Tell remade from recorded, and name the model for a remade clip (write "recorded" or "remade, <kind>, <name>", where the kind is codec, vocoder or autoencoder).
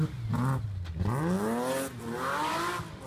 recorded